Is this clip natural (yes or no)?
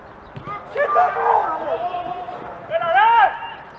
yes